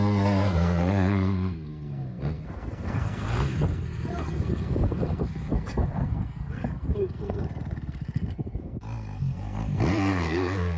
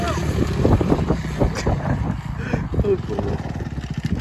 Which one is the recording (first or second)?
second